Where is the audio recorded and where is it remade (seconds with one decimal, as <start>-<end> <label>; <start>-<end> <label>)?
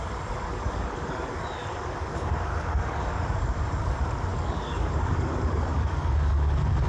0.0-6.9 remade